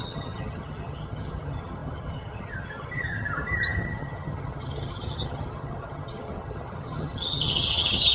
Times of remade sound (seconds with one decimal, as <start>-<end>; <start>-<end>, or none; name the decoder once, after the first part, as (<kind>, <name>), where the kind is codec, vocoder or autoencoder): 0.0-8.1 (vocoder, HiFi-GAN)